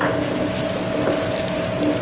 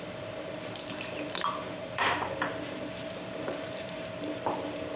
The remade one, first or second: second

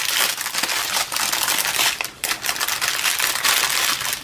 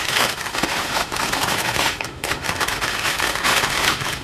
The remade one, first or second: second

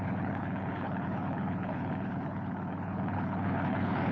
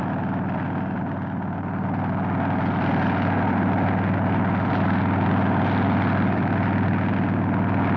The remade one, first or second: first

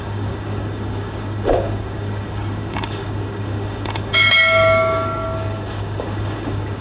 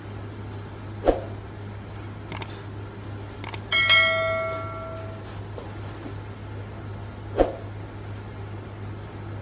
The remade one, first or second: first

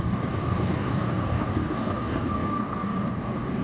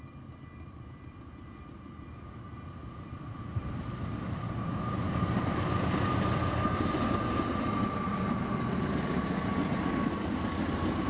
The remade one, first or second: first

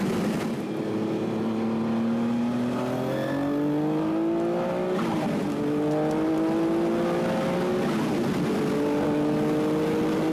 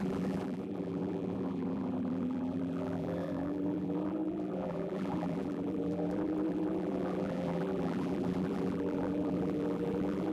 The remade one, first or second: second